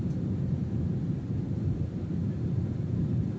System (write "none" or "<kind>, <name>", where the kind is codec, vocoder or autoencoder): none